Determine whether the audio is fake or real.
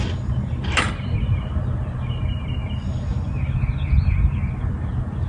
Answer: real